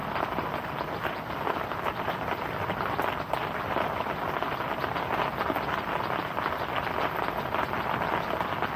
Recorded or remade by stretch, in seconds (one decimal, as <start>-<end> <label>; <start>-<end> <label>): 0.0-8.8 recorded